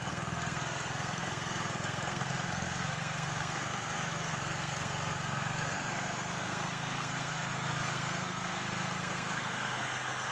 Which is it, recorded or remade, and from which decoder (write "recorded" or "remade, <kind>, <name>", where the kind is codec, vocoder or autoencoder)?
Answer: remade, codec, SNAC